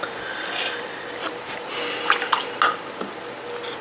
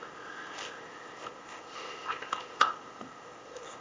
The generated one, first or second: second